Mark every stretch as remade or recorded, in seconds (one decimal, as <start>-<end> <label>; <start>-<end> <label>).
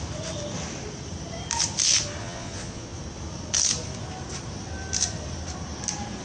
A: 0.0-2.2 recorded; 2.2-3.0 remade; 3.0-6.2 recorded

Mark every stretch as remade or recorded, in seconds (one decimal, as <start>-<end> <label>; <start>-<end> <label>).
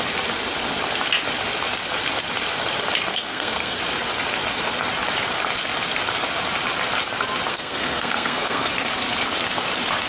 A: 0.0-3.1 recorded; 3.1-3.8 remade; 3.8-7.5 recorded; 7.5-8.7 remade; 8.7-10.1 recorded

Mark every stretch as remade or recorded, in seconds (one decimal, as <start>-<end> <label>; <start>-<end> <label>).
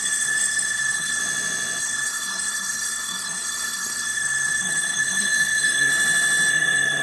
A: 0.0-1.2 remade; 1.2-1.8 recorded; 1.8-5.9 remade; 5.9-6.5 recorded; 6.5-7.0 remade